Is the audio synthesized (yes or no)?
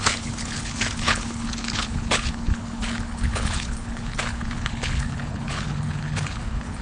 yes